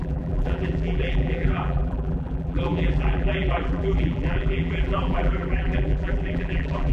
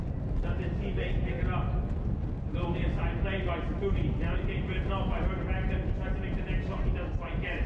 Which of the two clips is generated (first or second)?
first